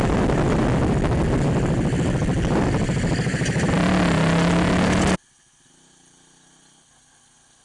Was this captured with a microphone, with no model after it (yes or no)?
yes